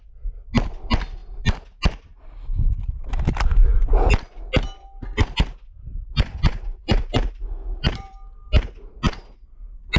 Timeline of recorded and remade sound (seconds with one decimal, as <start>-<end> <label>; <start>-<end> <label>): 0.0-6.8 recorded; 6.8-8.1 remade; 8.1-10.0 recorded